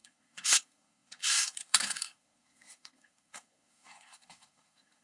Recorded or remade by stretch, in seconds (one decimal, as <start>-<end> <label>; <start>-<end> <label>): 0.0-5.0 remade